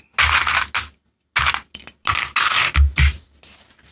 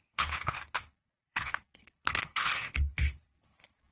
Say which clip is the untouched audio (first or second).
first